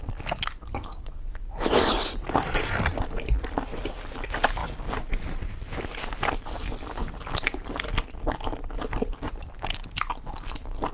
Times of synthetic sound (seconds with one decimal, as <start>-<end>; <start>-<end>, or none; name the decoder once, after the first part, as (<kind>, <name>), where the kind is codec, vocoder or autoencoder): none